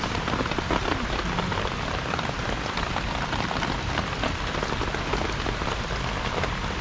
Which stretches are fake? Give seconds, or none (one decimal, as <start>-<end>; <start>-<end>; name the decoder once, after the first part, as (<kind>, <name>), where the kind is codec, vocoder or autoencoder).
none